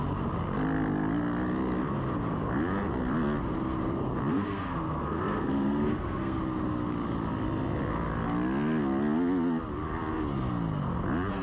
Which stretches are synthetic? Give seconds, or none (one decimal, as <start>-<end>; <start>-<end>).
4.3-6.4